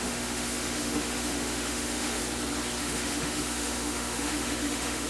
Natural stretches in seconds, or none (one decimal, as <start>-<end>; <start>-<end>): 2.2-2.8